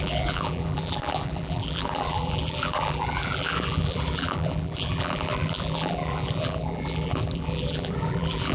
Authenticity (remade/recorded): remade